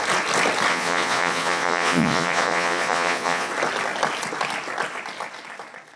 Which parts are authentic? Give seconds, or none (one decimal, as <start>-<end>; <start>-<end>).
0.0-0.7; 3.5-6.0